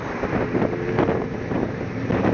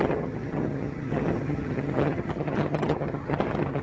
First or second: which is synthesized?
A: second